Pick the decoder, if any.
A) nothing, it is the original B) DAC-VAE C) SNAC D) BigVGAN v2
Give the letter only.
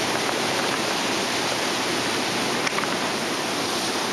A